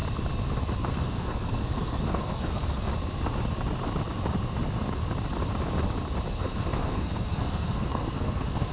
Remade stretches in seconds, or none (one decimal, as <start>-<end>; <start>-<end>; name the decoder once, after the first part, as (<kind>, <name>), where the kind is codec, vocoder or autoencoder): 0.9-2.9 (codec, SNAC); 6.4-8.7